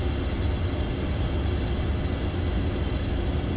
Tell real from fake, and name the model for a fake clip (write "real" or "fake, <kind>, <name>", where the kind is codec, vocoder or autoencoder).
real